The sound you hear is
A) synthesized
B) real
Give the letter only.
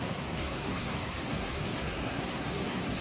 A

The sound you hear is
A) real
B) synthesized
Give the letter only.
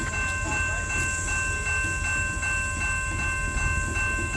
A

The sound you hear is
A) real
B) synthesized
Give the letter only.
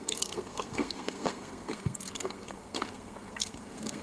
B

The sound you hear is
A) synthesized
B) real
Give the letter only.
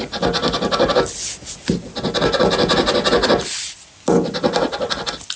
B